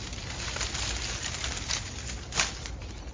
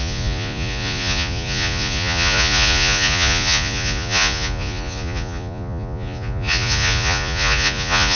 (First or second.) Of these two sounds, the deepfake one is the second